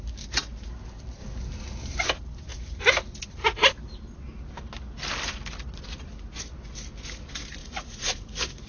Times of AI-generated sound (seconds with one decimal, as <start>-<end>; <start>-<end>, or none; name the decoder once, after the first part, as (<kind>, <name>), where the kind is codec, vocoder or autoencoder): 7.6-8.7 (vocoder, Vocos)